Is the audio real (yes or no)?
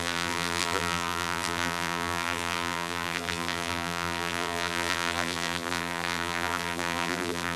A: no